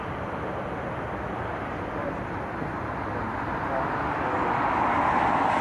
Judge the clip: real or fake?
real